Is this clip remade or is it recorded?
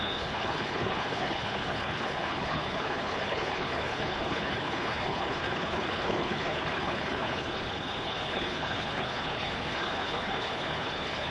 remade